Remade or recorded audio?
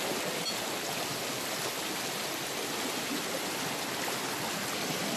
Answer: recorded